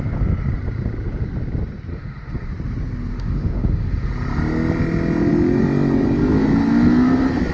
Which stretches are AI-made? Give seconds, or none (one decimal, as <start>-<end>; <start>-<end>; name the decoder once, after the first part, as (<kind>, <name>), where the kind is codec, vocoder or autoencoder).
1.9-2.5 (autoencoder, DAC-VAE); 3.1-4.1